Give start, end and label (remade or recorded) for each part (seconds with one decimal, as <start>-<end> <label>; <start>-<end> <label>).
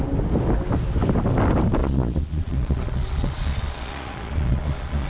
0.0-1.8 recorded; 1.8-5.1 remade